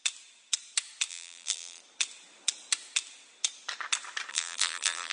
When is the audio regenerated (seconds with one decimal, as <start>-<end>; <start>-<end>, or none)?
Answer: 1.1-1.8; 4.3-5.1